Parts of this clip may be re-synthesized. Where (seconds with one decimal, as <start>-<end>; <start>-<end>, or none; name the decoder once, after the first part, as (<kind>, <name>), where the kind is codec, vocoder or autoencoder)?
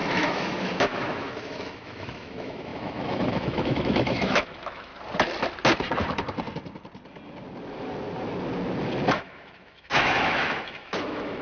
0.0-4.9 (autoencoder, DAC-VAE); 9.1-11.4